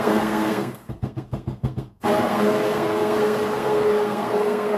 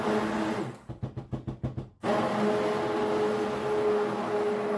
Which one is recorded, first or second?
second